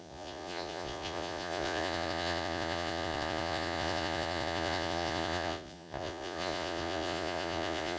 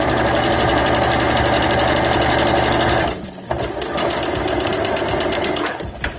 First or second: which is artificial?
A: first